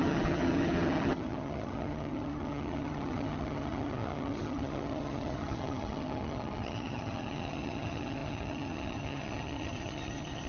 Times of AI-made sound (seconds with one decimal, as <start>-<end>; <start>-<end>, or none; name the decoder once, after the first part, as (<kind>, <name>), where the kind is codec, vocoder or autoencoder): 0.0-10.5 (vocoder, HiFi-GAN)